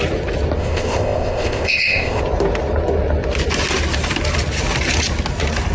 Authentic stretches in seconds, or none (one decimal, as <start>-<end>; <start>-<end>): 0.0-0.6; 2.2-5.7